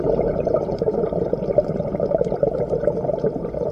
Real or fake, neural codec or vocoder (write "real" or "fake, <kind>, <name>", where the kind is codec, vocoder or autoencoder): fake, vocoder, BigVGAN v2